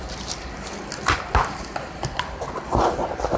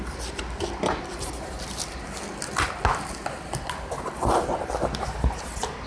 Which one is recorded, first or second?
second